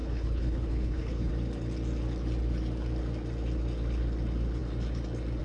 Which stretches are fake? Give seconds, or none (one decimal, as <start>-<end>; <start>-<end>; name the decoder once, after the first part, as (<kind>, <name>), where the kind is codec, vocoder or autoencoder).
0.0-1.3 (codec, HILCodec)